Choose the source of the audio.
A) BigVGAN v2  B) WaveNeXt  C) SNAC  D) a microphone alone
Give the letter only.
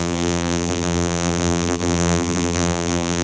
A